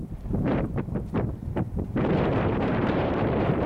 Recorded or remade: remade